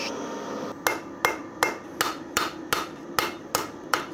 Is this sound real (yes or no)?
yes